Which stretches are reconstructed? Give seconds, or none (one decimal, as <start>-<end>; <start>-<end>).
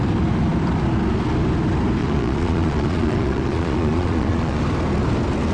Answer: 2.0-4.6